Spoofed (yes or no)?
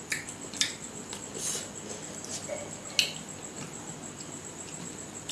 no